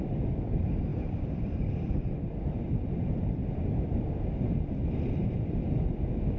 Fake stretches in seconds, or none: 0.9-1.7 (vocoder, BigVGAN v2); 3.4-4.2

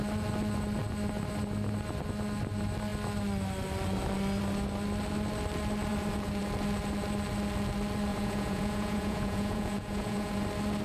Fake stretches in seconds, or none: 8.1-10.4 (vocoder, Vocos)